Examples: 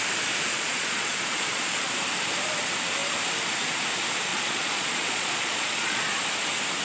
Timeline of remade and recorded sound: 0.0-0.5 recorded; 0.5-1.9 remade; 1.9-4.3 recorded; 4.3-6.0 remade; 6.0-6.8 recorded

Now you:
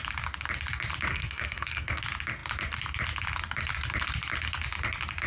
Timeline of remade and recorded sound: 0.0-1.1 recorded; 1.1-2.0 remade; 2.0-5.3 recorded

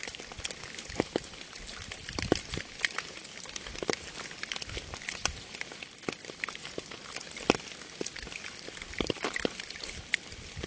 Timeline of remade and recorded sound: 0.0-6.2 recorded; 6.2-7.0 remade; 7.0-10.7 recorded